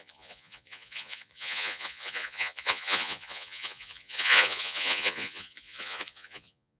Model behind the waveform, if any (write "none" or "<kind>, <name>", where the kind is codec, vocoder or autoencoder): vocoder, Vocos